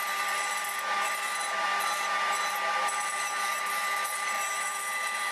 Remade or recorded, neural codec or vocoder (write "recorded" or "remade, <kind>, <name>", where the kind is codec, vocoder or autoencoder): recorded